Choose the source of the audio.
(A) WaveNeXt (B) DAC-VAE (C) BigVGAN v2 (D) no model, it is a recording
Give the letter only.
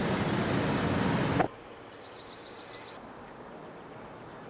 D